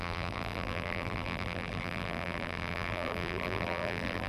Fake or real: fake